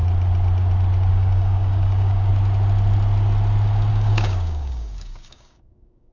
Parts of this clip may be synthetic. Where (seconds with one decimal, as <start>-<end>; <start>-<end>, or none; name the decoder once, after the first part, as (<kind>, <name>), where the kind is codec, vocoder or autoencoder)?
1.1-2.3 (codec, DAC); 3.9-6.1